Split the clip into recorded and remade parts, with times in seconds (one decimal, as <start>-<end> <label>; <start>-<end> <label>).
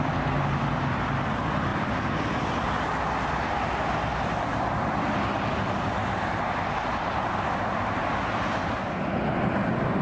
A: 0.0-10.0 recorded